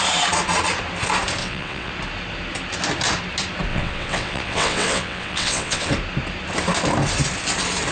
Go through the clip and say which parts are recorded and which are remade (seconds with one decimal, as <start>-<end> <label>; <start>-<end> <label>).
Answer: 0.0-1.4 recorded; 1.4-1.9 remade; 1.9-3.7 recorded; 3.7-5.9 remade; 5.9-7.9 recorded